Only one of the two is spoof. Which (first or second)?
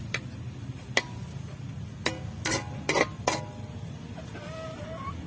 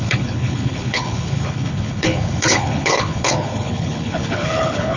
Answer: second